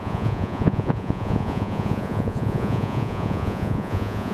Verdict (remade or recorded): remade